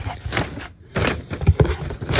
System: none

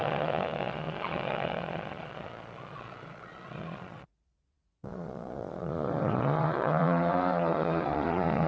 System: vocoder, Vocos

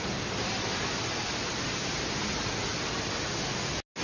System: none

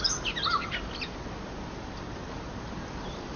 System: none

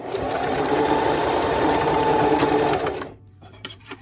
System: vocoder, BigVGAN v2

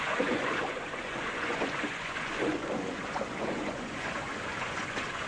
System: vocoder, Vocos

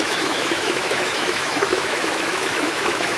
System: autoencoder, DAC-VAE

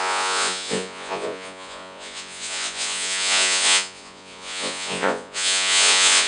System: vocoder, Vocos